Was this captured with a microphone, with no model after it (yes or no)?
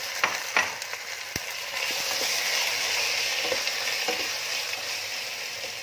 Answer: yes